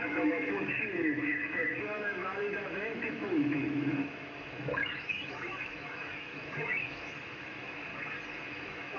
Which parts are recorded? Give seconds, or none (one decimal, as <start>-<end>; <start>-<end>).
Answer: 7.9-8.5